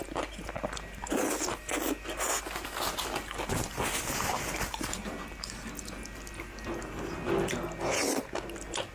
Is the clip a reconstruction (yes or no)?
no